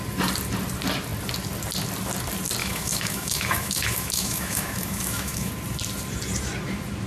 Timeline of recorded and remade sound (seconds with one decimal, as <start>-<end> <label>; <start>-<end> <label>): 0.0-2.6 recorded; 2.6-5.5 remade; 5.5-7.1 recorded